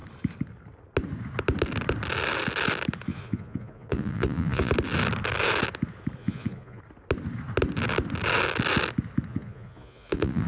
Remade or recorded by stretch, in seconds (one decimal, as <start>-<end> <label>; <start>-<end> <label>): 0.0-3.1 recorded; 3.1-4.7 remade; 4.7-6.2 recorded; 6.2-6.8 remade; 6.8-9.3 recorded; 9.3-10.5 remade